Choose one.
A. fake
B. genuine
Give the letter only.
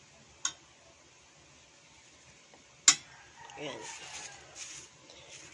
B